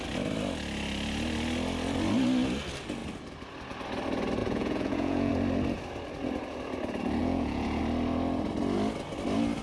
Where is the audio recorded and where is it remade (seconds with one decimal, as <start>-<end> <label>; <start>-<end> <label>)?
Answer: 0.0-4.4 recorded; 4.4-5.3 remade; 5.3-7.2 recorded; 7.2-7.8 remade; 7.8-9.6 recorded